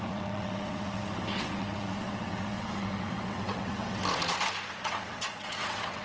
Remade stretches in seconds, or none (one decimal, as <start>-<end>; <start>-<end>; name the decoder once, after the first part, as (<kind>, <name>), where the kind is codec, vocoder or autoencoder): 0.0-4.0 (vocoder, WaveNeXt); 4.8-6.0